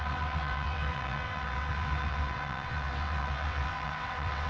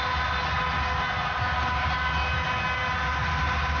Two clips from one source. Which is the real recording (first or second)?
second